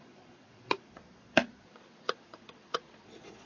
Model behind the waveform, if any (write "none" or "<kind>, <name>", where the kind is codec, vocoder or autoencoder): vocoder, Vocos